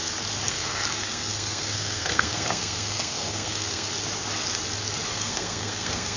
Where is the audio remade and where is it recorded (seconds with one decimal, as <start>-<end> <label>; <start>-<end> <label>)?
0.0-0.5 recorded; 0.5-3.9 remade; 3.9-5.1 recorded; 5.1-6.2 remade